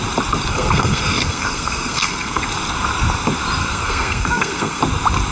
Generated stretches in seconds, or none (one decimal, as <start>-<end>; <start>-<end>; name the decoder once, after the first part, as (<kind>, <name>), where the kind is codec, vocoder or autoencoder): 0.5-2.4 (codec, SNAC); 3.6-4.8